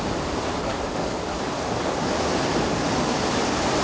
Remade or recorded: recorded